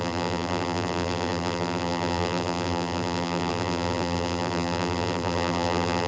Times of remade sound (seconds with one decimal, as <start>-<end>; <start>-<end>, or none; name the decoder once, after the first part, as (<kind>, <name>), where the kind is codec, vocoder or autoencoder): 0.0-6.1 (vocoder, BigVGAN v2)